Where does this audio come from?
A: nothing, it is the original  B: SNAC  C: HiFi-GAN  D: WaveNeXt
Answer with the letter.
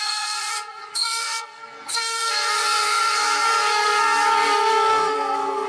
B